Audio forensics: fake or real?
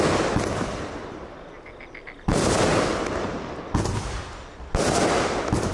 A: real